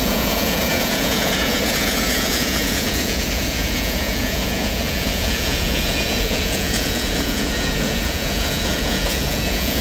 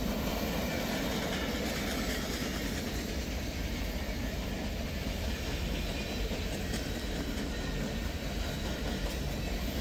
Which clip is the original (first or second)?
second